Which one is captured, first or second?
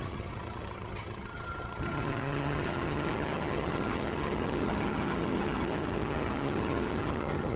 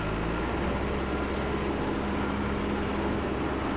second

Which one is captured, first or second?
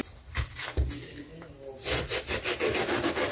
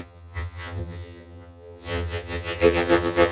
first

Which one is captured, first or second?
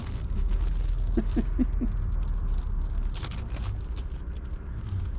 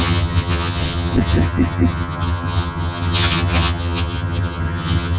first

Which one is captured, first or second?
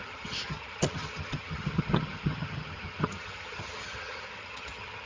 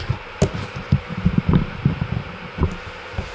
second